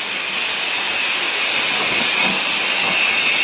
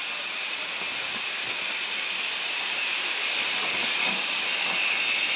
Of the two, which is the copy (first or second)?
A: second